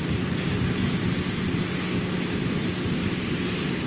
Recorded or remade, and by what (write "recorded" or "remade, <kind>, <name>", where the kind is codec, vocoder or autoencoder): recorded